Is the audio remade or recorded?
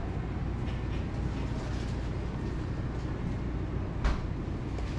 recorded